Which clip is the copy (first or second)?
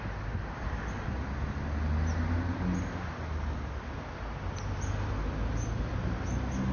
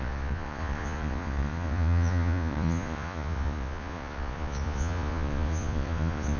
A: second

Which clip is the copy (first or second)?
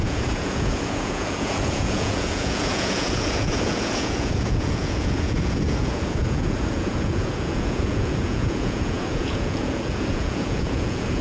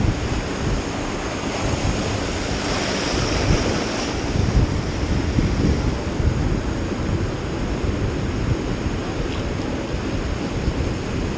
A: first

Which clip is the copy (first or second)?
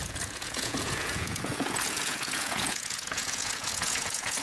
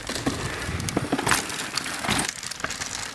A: first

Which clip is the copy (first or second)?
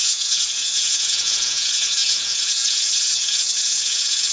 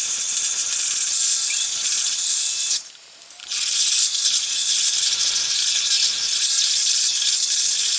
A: first